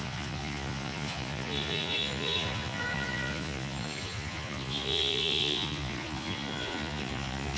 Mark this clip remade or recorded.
remade